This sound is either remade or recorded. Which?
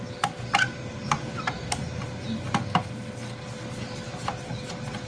recorded